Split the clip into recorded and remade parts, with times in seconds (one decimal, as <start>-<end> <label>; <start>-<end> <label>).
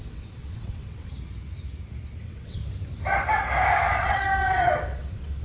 0.0-1.1 remade; 1.1-2.2 recorded; 2.2-2.6 remade; 2.6-4.0 recorded; 4.0-5.4 remade